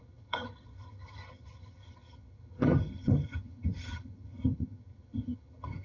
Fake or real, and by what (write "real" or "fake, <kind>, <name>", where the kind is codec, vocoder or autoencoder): fake, vocoder, HiFi-GAN